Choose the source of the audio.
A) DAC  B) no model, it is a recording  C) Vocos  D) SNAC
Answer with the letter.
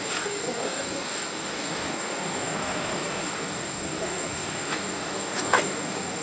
A